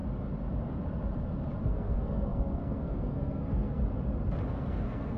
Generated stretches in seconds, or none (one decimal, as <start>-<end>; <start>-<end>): 1.6-3.8; 4.5-5.2